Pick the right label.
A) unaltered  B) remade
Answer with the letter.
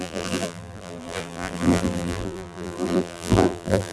B